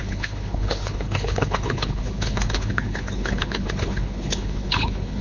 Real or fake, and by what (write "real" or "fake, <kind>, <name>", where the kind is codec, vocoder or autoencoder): fake, codec, HILCodec